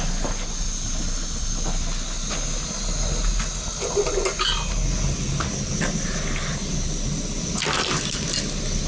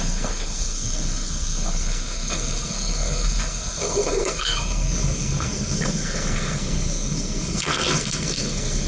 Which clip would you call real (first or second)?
first